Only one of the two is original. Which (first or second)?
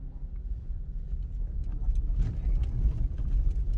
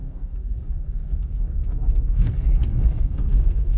first